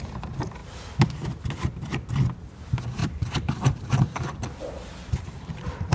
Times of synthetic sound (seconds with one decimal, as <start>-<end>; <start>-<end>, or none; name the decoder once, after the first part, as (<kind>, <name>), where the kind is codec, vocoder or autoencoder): 3.0-3.9 (vocoder, BigVGAN v2)